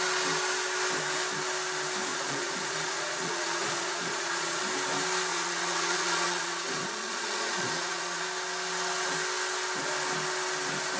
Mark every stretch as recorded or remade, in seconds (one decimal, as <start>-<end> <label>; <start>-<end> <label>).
0.0-2.1 recorded; 2.1-4.6 remade; 4.6-5.3 recorded; 5.3-8.2 remade; 8.2-11.0 recorded